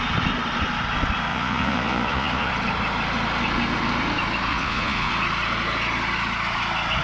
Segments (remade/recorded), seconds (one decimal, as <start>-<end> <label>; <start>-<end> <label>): 0.0-1.3 recorded; 1.3-2.5 remade; 2.5-4.5 recorded; 4.5-5.1 remade; 5.1-7.0 recorded